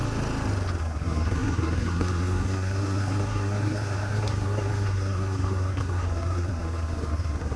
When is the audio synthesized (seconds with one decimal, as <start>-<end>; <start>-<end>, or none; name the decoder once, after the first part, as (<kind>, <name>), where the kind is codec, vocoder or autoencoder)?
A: 0.8-7.6 (codec, SNAC)